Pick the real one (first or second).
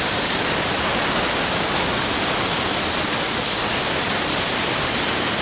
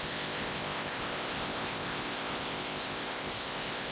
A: first